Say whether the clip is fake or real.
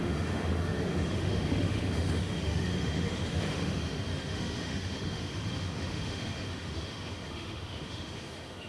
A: fake